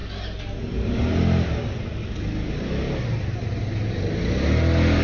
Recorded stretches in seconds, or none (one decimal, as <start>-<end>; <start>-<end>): 0.0-5.0